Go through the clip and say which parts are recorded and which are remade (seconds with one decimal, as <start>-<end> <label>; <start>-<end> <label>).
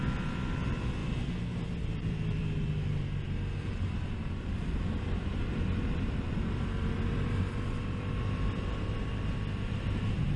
0.0-1.0 remade; 1.0-1.7 recorded; 1.7-10.4 remade